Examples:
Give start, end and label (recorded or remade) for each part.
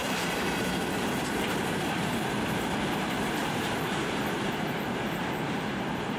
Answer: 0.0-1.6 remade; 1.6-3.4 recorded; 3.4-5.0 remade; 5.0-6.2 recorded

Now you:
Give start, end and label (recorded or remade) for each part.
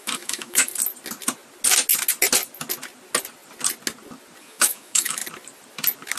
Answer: 0.0-0.7 remade; 0.7-4.4 recorded; 4.4-5.2 remade; 5.2-6.2 recorded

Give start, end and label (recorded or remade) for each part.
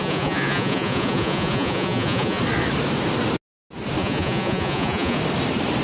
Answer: 0.0-2.4 remade; 2.4-4.0 recorded; 4.0-5.2 remade; 5.2-5.8 recorded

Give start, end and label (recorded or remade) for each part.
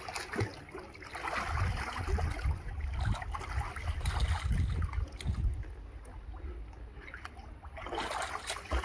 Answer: 0.0-8.8 recorded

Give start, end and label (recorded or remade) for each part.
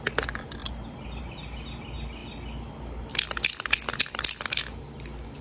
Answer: 0.0-0.6 recorded; 0.6-1.2 remade; 1.2-5.4 recorded